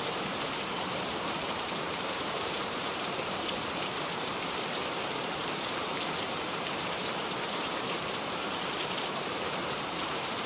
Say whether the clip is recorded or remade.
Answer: remade